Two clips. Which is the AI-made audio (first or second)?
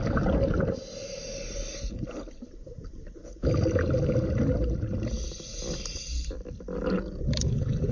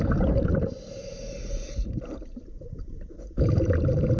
second